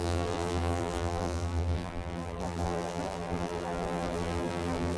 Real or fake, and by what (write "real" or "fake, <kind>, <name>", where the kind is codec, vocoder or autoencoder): fake, vocoder, BigVGAN v2